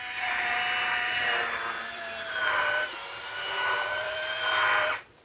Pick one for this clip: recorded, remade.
remade